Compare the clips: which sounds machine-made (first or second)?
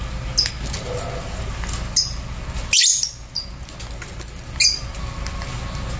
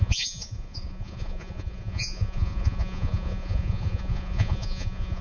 second